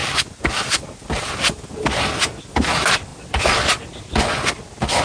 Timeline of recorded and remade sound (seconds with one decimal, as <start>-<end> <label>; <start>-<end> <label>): 0.0-5.0 recorded